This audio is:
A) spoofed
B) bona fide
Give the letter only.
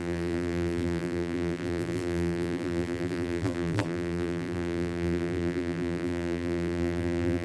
A